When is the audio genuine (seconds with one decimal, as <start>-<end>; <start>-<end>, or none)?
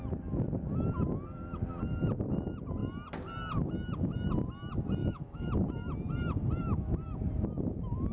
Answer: 0.0-5.0; 5.5-8.1